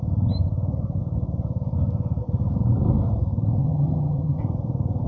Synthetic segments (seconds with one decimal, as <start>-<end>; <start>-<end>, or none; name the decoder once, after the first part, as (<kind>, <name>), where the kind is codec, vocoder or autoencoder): 3.6-4.4 (vocoder, HiFi-GAN)